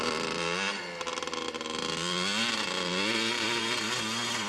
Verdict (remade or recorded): recorded